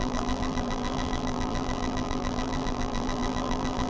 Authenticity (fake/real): fake